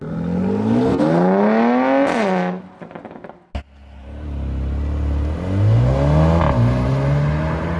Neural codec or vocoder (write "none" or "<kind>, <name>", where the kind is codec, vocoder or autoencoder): none